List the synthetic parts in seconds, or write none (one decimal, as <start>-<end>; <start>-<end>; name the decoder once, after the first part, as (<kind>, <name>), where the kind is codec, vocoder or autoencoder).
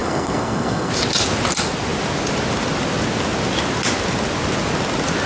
0.0-0.9 (codec, SNAC)